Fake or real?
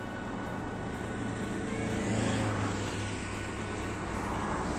real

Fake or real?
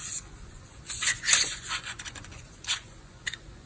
fake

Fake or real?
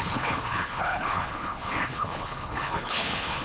fake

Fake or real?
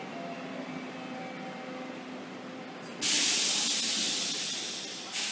real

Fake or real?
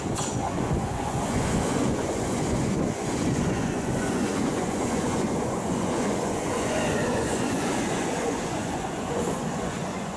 fake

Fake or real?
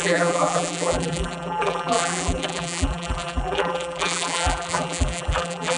fake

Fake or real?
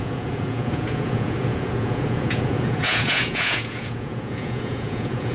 fake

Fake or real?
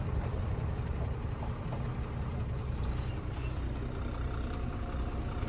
real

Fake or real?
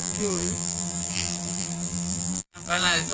fake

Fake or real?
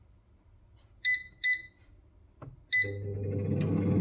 real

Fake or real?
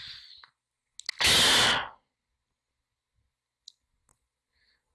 real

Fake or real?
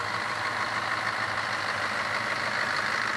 real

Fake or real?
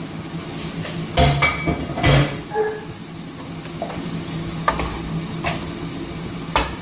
real